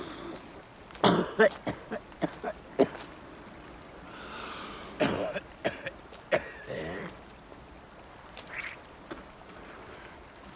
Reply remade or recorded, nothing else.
recorded